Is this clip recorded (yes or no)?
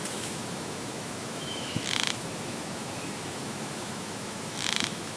no